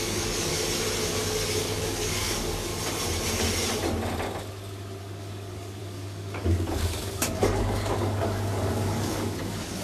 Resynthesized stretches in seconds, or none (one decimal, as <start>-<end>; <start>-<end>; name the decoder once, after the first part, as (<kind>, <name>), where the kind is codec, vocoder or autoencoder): 0.0-0.5 (codec, DAC); 1.6-2.7; 5.0-9.8